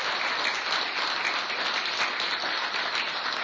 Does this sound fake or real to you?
real